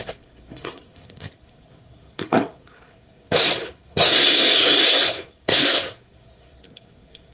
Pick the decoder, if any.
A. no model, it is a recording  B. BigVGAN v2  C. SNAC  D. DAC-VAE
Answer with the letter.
C